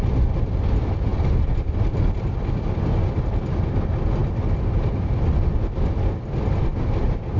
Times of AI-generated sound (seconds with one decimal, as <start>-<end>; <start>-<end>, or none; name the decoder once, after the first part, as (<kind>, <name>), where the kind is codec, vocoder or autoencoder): none